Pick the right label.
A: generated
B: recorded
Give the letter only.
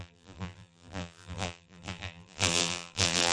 A